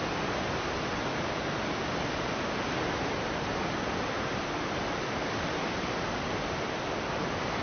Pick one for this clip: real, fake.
real